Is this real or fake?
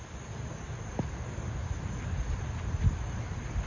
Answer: real